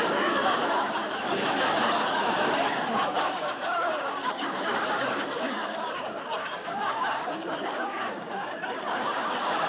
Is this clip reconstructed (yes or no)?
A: yes